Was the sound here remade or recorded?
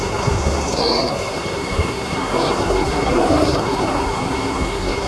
remade